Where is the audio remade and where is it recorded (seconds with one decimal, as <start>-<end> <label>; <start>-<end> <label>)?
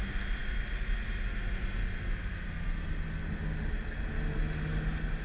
0.0-5.2 recorded